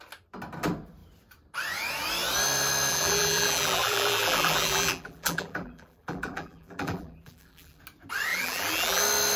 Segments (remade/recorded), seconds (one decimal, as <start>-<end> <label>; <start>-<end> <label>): 0.0-2.9 recorded; 2.9-7.8 remade; 7.8-8.3 recorded; 8.3-9.0 remade; 9.0-9.4 recorded